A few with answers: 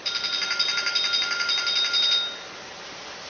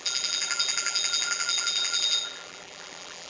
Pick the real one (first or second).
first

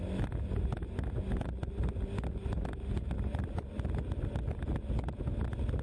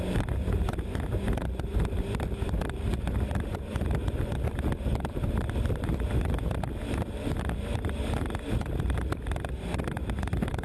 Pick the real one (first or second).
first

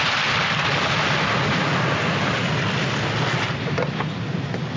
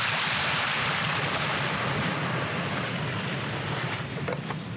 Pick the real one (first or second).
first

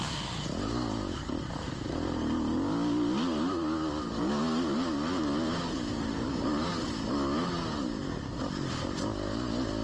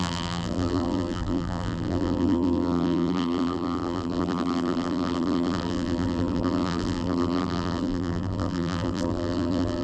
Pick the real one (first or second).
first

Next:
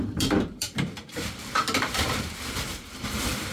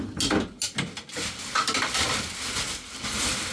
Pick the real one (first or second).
second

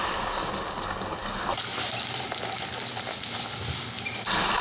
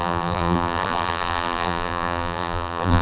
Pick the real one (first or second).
first